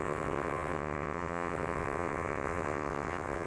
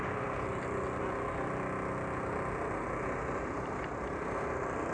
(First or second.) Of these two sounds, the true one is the second